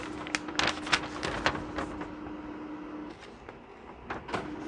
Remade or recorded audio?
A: recorded